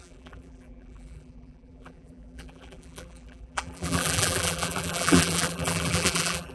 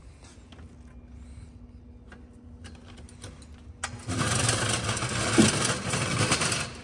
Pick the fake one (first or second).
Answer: first